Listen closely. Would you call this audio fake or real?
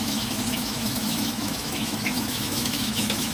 fake